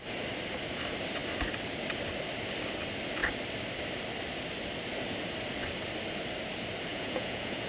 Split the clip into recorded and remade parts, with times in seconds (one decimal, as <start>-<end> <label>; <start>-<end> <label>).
0.0-6.9 recorded; 6.9-7.7 remade